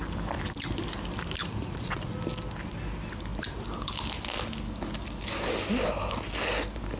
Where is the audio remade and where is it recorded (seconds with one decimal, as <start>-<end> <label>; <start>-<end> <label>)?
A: 0.0-1.4 recorded; 1.4-2.2 remade; 2.2-7.0 recorded